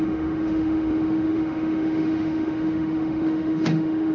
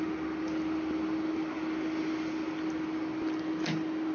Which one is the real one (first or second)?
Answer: second